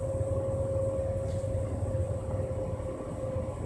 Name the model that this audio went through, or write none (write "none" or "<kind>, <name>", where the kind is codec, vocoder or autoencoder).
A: none